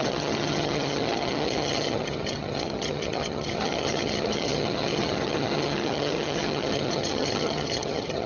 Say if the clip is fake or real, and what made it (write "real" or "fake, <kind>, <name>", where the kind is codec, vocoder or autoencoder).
fake, vocoder, HiFi-GAN